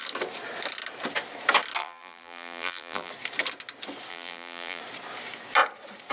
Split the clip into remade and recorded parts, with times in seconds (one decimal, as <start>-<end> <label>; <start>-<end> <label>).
0.0-1.8 recorded; 1.8-3.1 remade; 3.1-4.1 recorded; 4.1-4.8 remade; 4.8-6.1 recorded